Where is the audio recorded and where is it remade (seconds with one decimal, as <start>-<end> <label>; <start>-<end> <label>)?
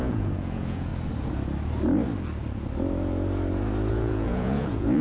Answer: 0.0-0.9 remade; 0.9-3.9 recorded; 3.9-5.0 remade